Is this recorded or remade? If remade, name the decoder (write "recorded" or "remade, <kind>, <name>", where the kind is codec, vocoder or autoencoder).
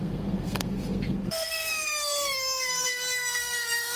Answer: remade, codec, SNAC